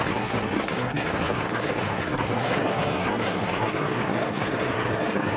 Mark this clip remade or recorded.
remade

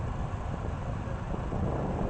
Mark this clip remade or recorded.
remade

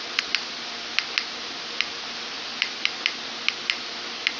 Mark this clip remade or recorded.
recorded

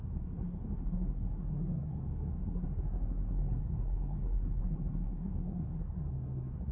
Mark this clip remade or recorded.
remade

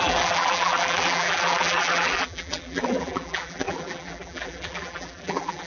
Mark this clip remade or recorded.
remade